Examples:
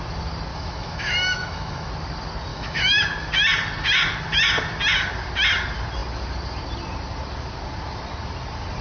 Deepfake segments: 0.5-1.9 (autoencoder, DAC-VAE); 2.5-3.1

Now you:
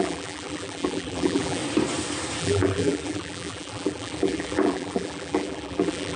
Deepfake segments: 0.0-1.6 (vocoder, BigVGAN v2); 2.4-6.2

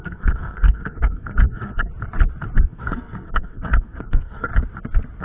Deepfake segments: 0.0-1.9 (codec, SNAC); 2.6-4.5

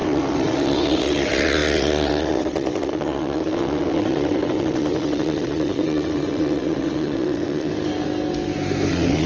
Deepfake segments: 0.0-7.7 (vocoder, WaveNeXt); 8.9-9.3

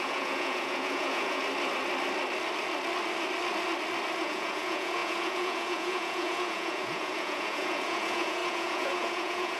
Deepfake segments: 0.0-1.4 (vocoder, Vocos); 4.2-9.6

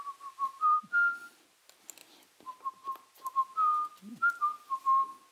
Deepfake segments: 0.0-0.8 (vocoder, BigVGAN v2); 2.0-3.3